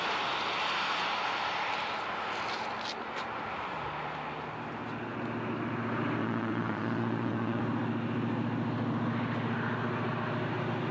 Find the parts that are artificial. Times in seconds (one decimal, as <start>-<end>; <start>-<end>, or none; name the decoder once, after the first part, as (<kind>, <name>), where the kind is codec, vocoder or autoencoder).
6.2-7.6 (vocoder, Vocos)

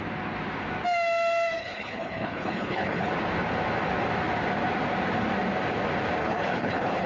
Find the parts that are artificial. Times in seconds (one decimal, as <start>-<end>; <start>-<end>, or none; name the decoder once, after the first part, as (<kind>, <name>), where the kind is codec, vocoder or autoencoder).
1.6-3.1 (codec, HILCodec); 6.2-7.1

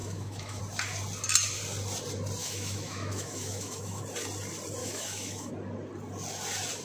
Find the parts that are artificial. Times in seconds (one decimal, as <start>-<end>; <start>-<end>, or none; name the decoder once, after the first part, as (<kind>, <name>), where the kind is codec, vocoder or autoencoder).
0.0-0.6 (autoencoder, DAC-VAE); 2.4-4.0; 4.8-5.5

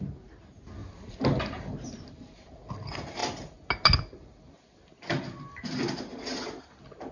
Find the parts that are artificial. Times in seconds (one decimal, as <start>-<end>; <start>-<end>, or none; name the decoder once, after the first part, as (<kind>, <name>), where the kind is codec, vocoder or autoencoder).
none

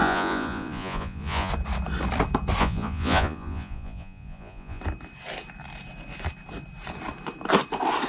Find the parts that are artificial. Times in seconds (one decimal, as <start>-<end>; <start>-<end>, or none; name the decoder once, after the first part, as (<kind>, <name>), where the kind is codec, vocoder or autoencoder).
0.0-1.5 (vocoder, Vocos); 2.6-4.8

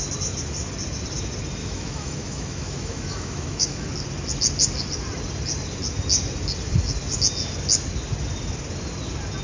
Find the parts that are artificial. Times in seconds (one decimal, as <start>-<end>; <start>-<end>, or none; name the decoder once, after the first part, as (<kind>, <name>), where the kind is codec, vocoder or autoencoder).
1.6-3.9 (autoencoder, DAC-VAE)